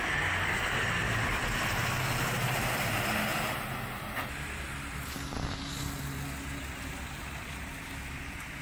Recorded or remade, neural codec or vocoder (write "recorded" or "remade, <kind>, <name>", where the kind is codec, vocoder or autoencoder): recorded